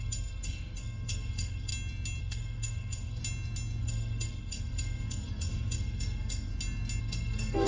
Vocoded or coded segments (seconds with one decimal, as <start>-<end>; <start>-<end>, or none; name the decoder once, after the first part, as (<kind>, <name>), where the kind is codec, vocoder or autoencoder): 0.0-1.7 (codec, SNAC); 2.2-3.2; 3.8-6.5; 7.0-7.7